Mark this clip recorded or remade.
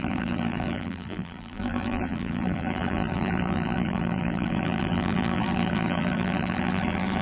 remade